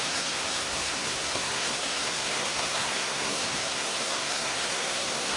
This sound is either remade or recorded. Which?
remade